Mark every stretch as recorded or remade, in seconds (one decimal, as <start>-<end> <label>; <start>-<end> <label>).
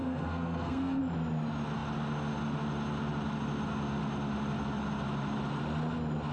0.0-1.0 remade; 1.0-6.3 recorded